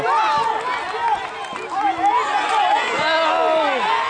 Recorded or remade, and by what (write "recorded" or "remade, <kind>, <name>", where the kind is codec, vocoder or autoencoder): recorded